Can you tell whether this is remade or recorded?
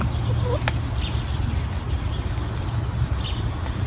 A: recorded